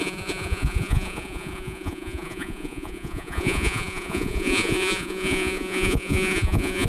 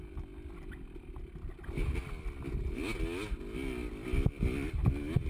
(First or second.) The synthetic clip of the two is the first